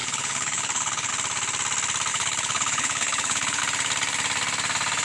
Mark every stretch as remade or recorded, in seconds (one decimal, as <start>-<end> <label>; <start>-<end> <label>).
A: 0.0-1.1 remade; 1.1-2.1 recorded; 2.1-3.6 remade; 3.6-5.0 recorded